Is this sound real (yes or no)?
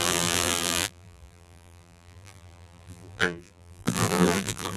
no